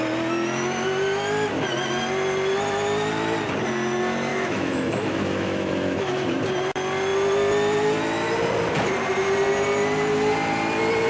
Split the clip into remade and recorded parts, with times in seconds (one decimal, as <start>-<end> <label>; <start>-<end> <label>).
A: 0.0-4.3 recorded; 4.3-6.4 remade; 6.4-11.1 recorded